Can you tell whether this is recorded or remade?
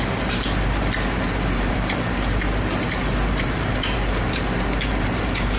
remade